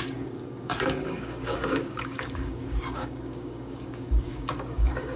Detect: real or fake fake